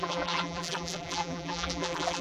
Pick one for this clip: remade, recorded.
remade